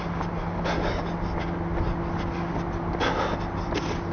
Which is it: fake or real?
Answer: real